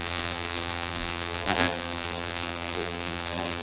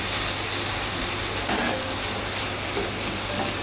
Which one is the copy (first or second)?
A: first